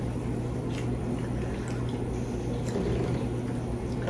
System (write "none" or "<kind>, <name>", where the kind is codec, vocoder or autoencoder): none